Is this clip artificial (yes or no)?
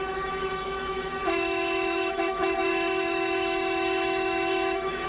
yes